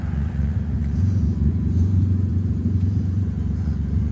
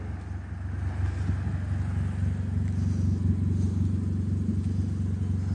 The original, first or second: second